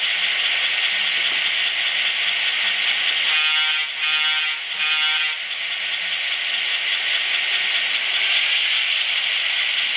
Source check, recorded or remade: recorded